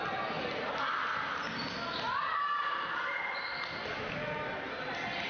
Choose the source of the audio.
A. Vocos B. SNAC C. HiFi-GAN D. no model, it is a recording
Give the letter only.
D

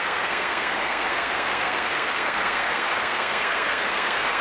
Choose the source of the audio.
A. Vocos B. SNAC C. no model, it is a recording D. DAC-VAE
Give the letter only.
B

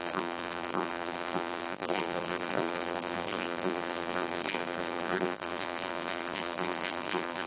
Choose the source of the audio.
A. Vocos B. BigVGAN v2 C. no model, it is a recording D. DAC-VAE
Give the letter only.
B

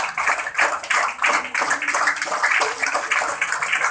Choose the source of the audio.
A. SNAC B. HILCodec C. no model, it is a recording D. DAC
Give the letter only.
C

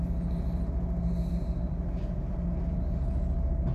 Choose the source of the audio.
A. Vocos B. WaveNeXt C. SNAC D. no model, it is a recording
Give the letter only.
D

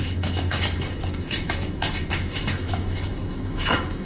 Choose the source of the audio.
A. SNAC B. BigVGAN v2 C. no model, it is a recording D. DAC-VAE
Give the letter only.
D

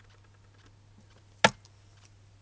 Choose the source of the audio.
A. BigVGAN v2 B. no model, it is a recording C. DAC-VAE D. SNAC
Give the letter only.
B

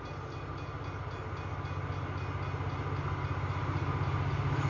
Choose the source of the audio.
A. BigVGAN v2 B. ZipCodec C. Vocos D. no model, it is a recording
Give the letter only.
D